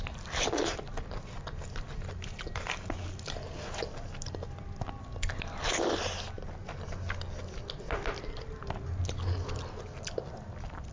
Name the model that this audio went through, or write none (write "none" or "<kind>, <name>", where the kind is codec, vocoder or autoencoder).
none